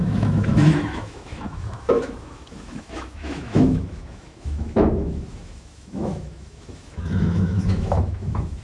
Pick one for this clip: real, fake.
fake